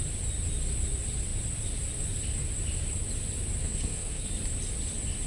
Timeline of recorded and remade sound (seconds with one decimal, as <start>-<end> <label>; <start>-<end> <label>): 0.0-3.6 recorded; 3.6-4.3 remade; 4.3-5.3 recorded